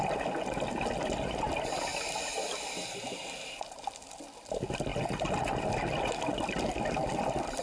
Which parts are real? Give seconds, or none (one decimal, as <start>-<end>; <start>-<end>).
0.0-7.6